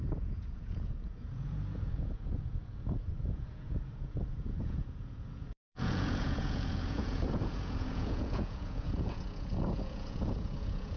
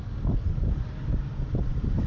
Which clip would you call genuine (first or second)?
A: second